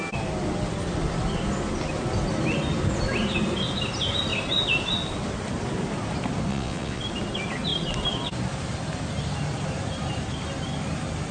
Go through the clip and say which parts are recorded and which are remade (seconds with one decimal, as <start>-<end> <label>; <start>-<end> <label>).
0.0-6.5 recorded; 6.5-7.0 remade; 7.0-11.3 recorded